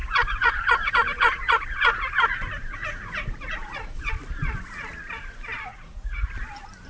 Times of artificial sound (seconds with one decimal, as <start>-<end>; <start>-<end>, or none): 0.0-4.1; 5.7-6.3